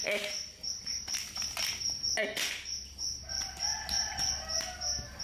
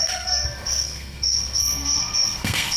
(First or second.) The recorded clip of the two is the first